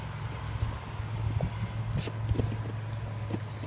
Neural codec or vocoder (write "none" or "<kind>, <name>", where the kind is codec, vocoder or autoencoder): none